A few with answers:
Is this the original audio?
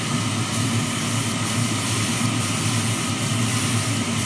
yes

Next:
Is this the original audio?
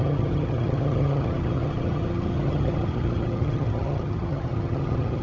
no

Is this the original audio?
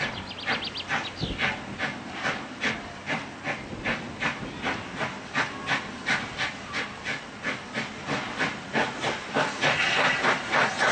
yes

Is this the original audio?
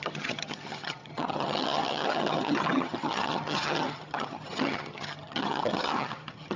no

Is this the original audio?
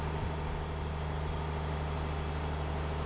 yes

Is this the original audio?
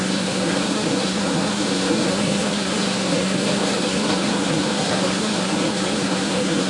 no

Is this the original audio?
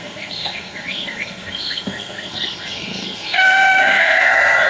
no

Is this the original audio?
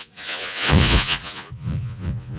no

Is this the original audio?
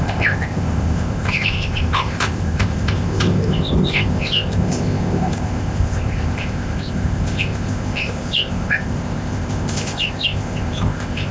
no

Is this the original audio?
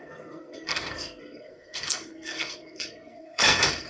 no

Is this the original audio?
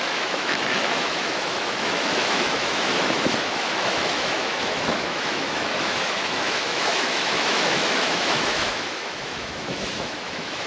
no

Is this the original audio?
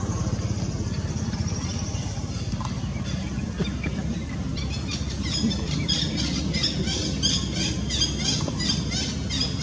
yes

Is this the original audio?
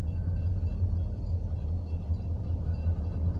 yes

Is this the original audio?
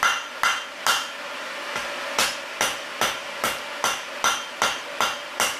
yes